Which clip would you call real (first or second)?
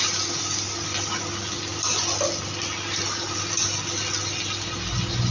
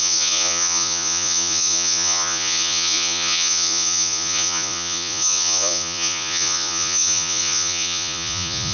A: first